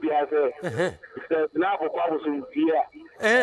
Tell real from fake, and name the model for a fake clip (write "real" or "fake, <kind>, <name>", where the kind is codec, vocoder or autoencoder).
real